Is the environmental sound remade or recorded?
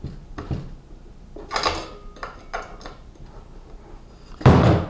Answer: recorded